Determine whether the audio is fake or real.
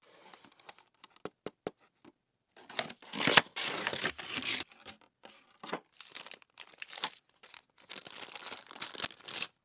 real